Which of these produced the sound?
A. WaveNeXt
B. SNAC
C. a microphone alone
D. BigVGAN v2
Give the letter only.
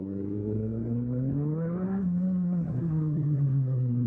B